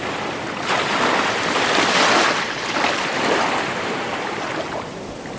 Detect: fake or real real